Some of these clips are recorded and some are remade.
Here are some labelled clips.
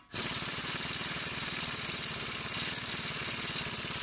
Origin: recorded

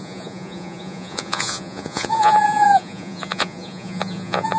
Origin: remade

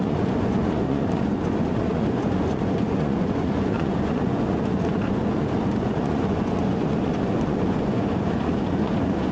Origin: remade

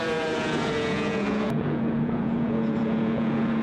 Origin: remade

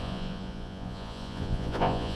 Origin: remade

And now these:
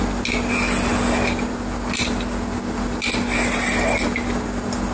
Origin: recorded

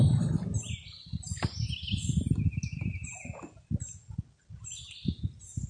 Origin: recorded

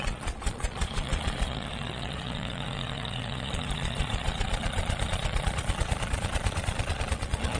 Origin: remade